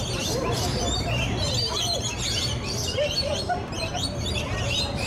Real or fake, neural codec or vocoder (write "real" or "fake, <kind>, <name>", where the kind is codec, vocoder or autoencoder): fake, vocoder, BigVGAN v2